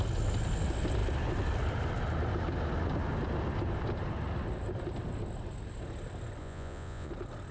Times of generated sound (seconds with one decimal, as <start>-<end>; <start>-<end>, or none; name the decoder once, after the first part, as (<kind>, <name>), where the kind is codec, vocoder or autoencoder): 6.4-7.1 (vocoder, Vocos)